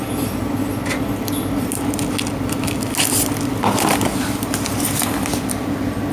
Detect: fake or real real